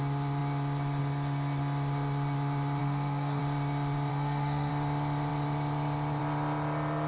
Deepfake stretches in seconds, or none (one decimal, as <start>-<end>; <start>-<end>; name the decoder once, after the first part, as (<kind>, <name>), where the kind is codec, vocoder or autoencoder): 2.8-3.4 (codec, SNAC); 4.1-4.7